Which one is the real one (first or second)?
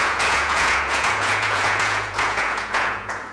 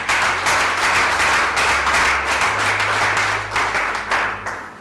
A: second